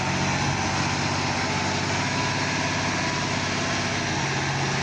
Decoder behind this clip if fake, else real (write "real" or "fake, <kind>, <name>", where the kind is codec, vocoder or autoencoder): real